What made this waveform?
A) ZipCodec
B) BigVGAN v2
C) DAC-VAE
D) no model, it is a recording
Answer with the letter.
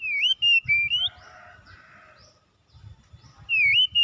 D